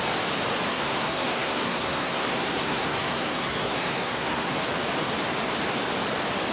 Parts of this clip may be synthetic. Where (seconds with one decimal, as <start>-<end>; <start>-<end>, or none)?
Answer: 0.7-4.6